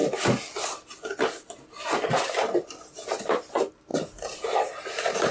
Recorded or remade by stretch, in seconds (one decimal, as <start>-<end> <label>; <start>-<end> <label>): 0.0-5.3 recorded